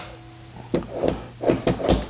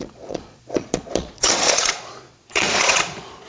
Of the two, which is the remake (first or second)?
second